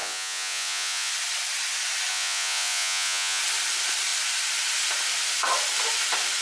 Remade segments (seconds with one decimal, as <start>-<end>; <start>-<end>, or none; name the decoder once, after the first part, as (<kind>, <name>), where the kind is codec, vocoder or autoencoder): 0.0-1.1 (vocoder, Vocos); 2.1-3.4